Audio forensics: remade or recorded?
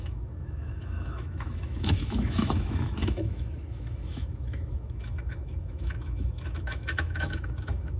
remade